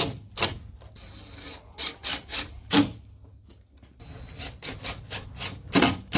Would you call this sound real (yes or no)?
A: yes